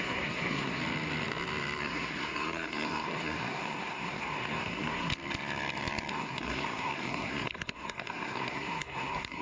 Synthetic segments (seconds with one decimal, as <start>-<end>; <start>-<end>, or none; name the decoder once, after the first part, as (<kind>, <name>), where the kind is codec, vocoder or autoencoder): 0.0-0.8 (codec, SNAC); 1.8-5.1; 6.1-9.4